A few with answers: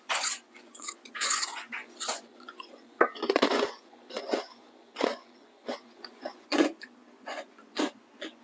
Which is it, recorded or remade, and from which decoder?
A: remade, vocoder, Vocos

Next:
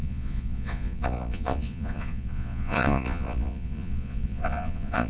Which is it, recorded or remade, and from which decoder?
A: remade, vocoder, Vocos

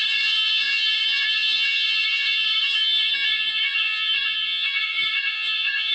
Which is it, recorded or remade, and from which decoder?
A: remade, vocoder, HiFi-GAN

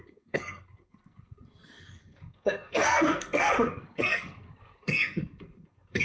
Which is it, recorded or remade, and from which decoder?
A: remade, codec, SNAC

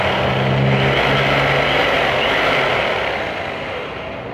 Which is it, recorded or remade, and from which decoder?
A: recorded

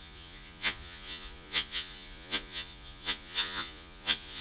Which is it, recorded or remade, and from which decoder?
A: remade, vocoder, Vocos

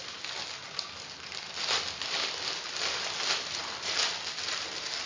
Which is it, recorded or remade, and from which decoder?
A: recorded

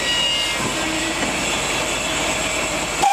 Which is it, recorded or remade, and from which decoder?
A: recorded